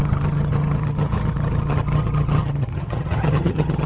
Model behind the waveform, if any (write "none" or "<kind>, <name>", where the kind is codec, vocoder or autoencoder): vocoder, HiFi-GAN